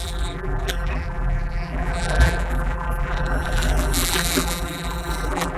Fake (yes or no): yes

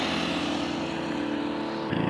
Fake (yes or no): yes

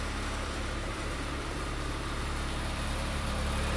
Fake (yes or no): yes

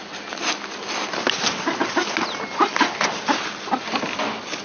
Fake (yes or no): no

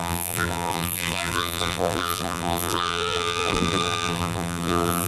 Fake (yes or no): yes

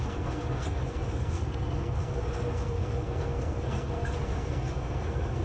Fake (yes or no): yes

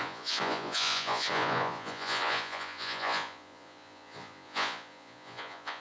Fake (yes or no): yes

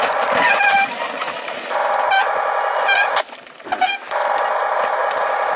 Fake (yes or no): no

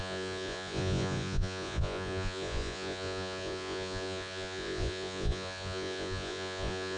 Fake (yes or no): yes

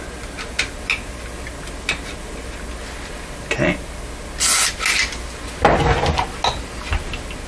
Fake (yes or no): no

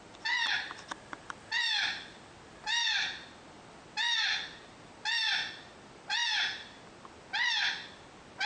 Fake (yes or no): no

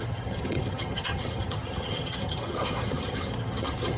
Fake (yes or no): yes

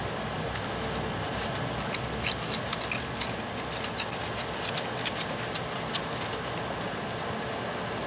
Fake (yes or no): no